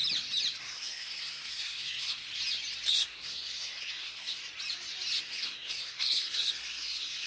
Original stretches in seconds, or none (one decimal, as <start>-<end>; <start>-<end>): 0.0-0.6; 2.3-2.9; 4.4-5.2